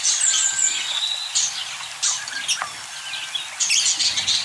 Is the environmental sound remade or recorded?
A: recorded